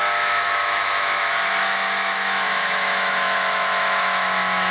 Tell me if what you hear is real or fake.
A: fake